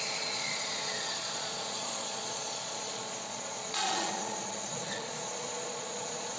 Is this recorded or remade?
remade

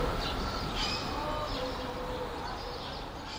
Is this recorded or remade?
recorded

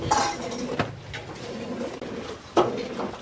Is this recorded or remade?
recorded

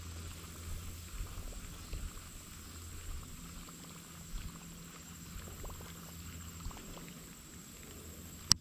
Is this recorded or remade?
recorded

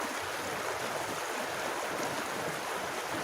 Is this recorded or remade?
recorded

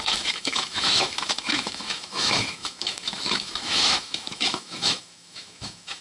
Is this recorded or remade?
remade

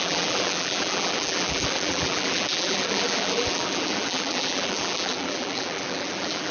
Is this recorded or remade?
remade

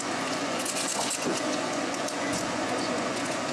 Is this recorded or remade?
remade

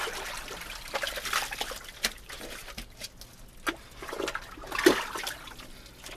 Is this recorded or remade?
recorded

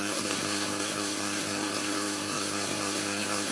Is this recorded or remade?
remade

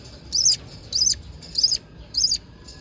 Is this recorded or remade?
recorded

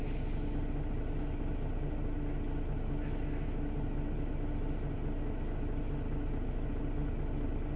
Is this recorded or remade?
recorded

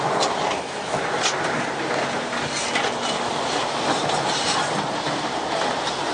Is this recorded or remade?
recorded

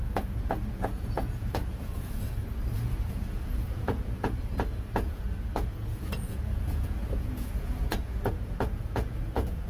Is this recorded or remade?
remade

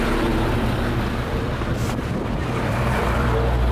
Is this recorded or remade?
remade